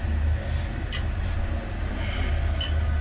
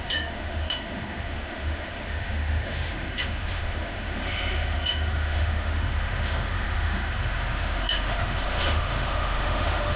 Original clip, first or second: first